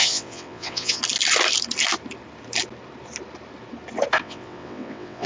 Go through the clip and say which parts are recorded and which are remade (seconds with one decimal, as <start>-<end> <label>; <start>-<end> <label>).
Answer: 0.0-1.0 remade; 1.0-4.2 recorded; 4.2-5.3 remade